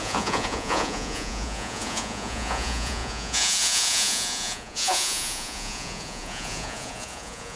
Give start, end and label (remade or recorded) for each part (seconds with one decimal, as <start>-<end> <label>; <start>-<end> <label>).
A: 0.0-7.6 remade

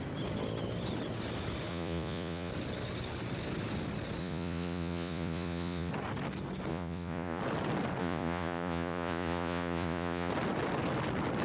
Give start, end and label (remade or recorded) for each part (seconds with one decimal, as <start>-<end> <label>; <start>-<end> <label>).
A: 0.0-1.7 recorded; 1.7-2.5 remade; 2.5-4.2 recorded; 4.2-5.9 remade; 5.9-6.7 recorded; 6.7-7.4 remade; 7.4-8.0 recorded; 8.0-10.3 remade; 10.3-11.4 recorded